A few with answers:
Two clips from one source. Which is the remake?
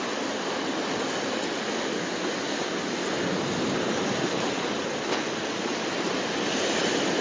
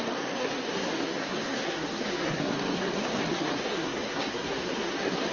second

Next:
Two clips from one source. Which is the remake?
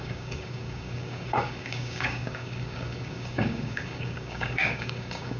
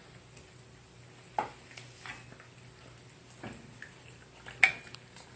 first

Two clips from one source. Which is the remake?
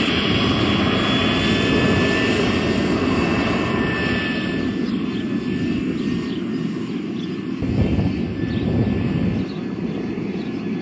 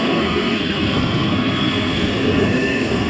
second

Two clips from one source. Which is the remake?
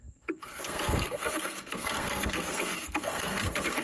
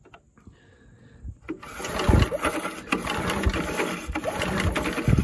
first